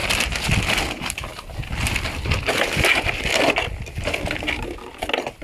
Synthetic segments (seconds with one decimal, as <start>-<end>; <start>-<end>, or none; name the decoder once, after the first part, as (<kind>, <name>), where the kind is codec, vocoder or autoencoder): none